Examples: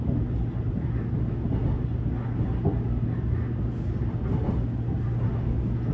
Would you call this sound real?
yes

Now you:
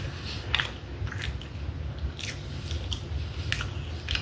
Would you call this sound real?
yes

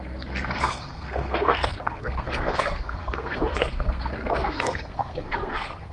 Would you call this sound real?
no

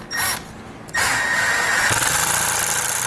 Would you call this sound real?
yes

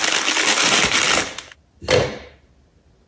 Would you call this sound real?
yes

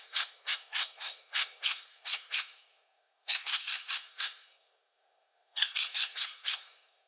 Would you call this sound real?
no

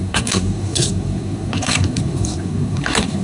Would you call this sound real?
no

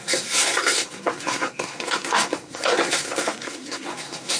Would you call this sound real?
no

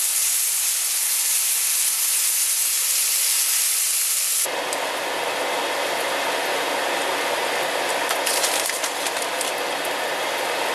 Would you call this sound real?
yes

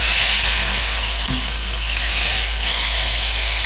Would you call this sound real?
no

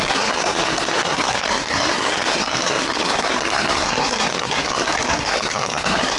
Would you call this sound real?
no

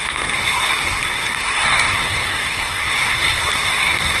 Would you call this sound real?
no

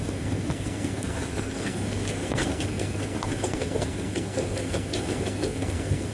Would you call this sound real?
no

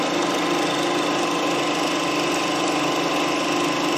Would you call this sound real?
yes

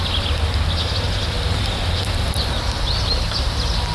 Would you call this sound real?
yes